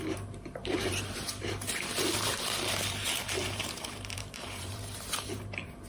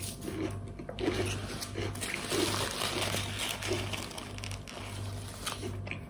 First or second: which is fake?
first